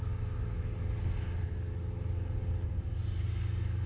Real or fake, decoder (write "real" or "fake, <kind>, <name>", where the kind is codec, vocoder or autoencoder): real